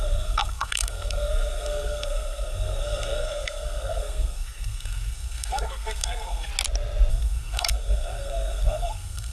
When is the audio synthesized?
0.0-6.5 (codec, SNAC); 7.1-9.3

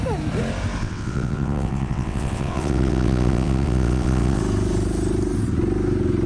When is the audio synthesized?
0.8-4.4 (vocoder, WaveNeXt)

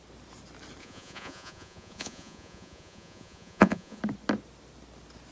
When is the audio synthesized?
0.8-4.0 (vocoder, Vocos)

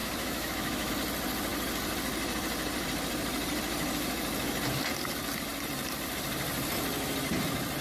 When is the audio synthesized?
0.0-0.9 (autoencoder, DAC-VAE)